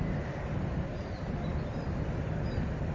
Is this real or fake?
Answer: real